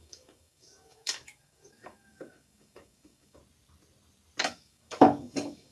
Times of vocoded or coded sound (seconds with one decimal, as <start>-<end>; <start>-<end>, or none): 0.0-3.4; 4.4-5.7